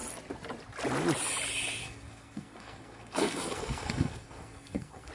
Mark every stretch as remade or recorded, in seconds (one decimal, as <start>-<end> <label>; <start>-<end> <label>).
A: 0.0-1.8 recorded; 1.8-5.1 remade